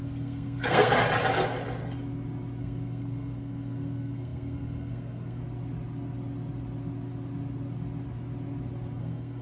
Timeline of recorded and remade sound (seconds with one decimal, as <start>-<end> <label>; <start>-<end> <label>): 0.0-0.9 remade; 0.9-2.6 recorded; 2.6-5.4 remade; 5.4-9.0 recorded; 9.0-9.4 remade